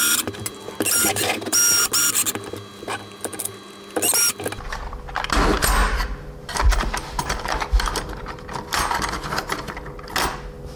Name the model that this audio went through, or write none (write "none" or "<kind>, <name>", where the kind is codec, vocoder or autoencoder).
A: none